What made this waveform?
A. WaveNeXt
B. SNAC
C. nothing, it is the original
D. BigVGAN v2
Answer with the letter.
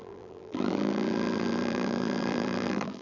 D